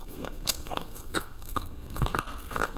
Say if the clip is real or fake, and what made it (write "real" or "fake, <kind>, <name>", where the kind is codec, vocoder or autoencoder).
fake, codec, SNAC